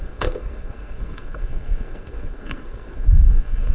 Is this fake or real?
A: fake